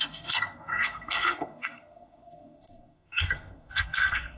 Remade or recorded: remade